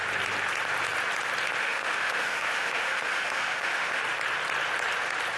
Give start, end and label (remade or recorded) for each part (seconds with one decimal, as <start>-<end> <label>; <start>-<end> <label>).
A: 0.0-1.6 recorded; 1.6-4.0 remade; 4.0-5.4 recorded